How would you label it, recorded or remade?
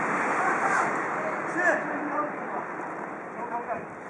recorded